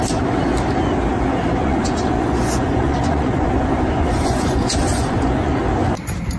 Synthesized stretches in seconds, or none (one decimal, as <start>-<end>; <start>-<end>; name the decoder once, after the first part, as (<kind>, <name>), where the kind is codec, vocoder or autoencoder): 1.6-3.5 (vocoder, Vocos); 3.9-5.6